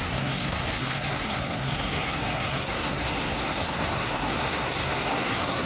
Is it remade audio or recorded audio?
remade